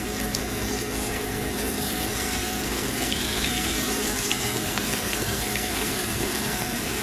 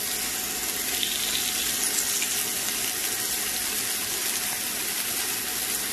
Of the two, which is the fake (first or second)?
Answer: first